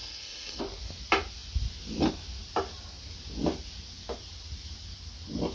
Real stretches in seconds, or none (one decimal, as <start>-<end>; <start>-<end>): 0.6-5.5